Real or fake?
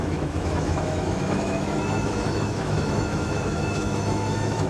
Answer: fake